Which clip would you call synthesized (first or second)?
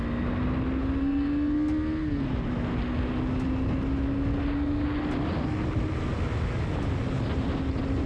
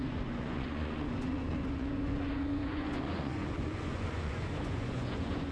second